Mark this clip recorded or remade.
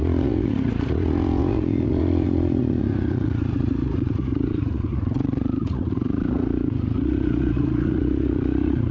remade